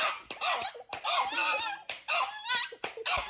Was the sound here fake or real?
real